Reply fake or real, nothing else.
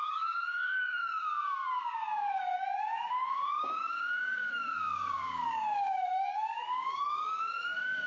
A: fake